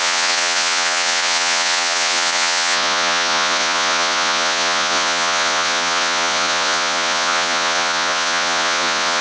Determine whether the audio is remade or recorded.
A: remade